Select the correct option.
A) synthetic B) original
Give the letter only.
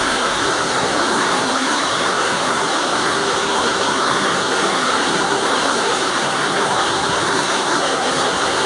A